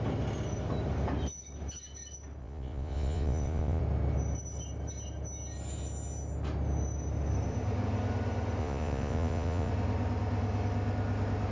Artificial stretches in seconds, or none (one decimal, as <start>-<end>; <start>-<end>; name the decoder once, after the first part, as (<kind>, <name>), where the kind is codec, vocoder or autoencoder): 2.4-3.8 (vocoder, Vocos); 8.6-9.7